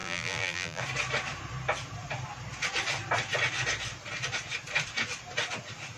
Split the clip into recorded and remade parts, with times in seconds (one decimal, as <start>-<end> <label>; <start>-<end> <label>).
0.0-0.8 remade; 0.8-6.0 recorded